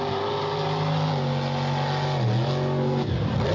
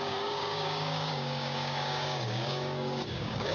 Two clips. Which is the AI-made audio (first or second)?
second